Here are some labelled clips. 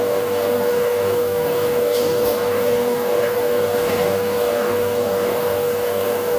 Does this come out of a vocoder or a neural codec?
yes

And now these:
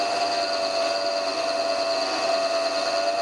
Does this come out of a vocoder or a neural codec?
no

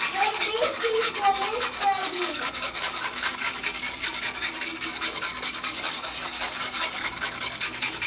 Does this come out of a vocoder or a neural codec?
yes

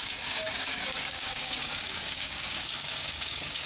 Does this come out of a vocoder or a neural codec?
yes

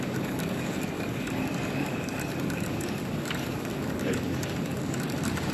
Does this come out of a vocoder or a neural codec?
yes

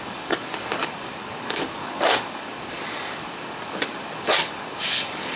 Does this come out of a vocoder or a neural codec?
yes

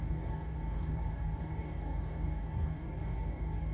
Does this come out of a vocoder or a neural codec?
yes